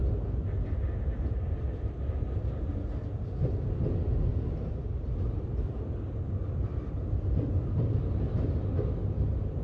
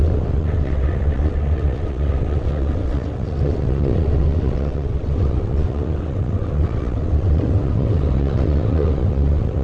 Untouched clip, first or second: first